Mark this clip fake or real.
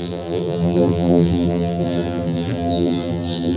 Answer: fake